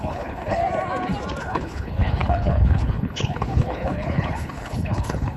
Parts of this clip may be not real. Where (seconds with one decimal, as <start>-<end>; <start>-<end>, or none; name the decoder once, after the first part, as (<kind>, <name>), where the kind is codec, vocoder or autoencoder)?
0.0-0.6 (codec, HILCodec); 1.4-5.4